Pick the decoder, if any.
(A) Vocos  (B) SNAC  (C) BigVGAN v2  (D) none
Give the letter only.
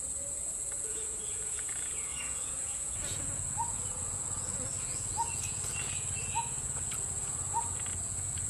A